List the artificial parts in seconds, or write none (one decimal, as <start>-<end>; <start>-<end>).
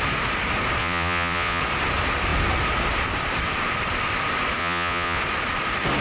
0.8-1.6; 4.6-5.2